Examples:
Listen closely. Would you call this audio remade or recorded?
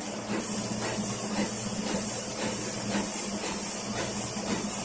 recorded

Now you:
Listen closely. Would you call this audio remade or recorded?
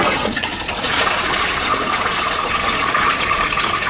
remade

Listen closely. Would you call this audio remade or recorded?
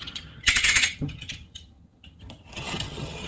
remade